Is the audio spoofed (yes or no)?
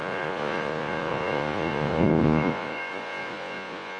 yes